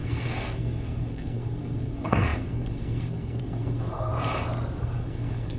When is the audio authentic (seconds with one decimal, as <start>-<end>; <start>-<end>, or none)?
4.1-4.8